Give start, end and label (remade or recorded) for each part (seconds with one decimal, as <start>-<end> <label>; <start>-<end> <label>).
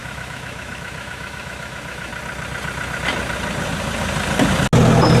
0.0-2.1 remade; 2.1-5.2 recorded